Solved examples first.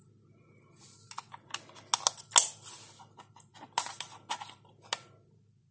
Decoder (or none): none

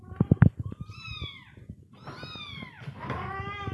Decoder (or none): none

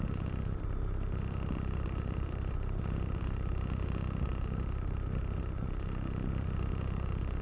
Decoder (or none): vocoder, BigVGAN v2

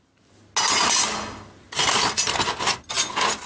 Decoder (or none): none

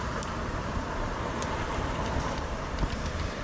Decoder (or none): vocoder, BigVGAN v2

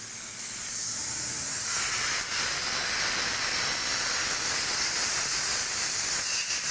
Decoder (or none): none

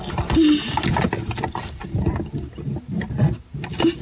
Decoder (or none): none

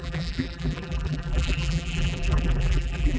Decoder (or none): vocoder, BigVGAN v2